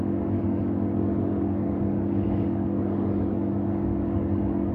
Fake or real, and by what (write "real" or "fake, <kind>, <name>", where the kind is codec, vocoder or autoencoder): fake, codec, DAC